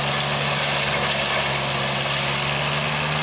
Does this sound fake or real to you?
real